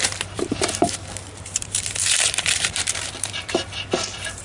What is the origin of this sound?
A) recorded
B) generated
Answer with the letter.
B